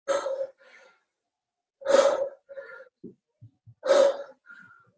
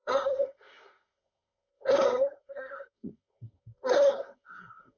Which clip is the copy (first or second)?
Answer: second